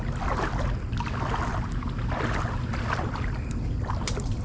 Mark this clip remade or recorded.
recorded